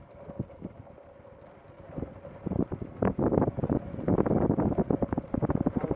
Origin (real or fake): real